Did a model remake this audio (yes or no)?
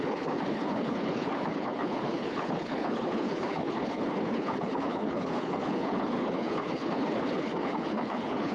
yes